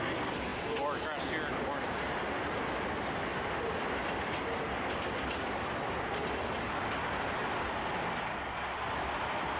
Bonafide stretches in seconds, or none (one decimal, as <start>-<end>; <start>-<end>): 0.0-9.6